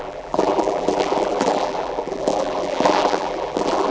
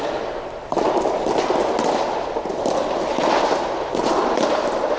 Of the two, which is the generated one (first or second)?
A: first